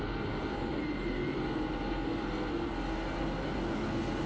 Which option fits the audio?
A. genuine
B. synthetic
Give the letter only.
A